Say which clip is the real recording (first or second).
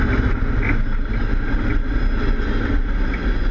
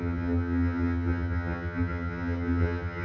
first